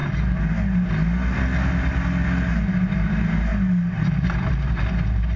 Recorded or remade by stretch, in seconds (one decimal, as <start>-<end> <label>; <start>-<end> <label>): 0.0-5.4 recorded